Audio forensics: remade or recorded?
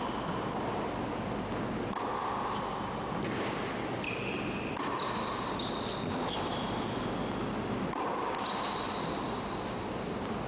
recorded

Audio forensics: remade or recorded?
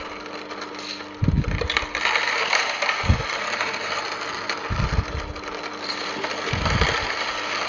recorded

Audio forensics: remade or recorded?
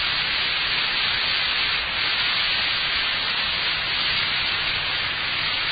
recorded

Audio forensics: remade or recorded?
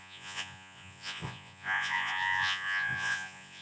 remade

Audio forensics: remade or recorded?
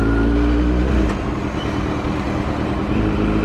recorded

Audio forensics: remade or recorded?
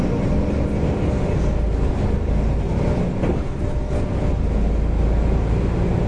recorded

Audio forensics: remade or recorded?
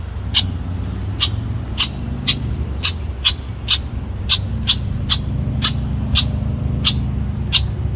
recorded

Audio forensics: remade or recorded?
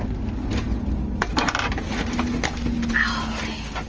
recorded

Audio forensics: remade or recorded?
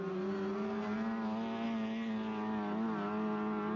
recorded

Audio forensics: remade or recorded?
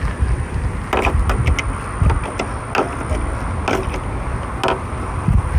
recorded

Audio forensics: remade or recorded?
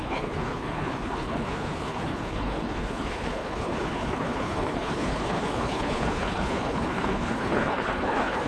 remade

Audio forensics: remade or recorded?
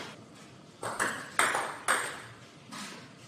recorded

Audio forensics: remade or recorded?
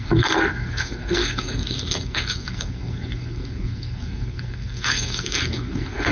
remade